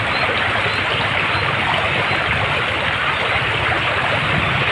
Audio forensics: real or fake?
real